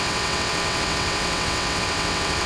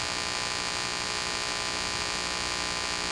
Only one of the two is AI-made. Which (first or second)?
first